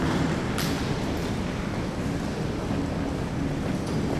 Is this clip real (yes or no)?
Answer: yes